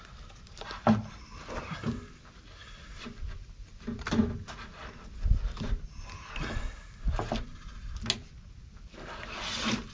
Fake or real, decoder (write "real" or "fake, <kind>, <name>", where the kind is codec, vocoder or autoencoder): real